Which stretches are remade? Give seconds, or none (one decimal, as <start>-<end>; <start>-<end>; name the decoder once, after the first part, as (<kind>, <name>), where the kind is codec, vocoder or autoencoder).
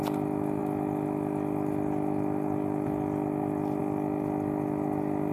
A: none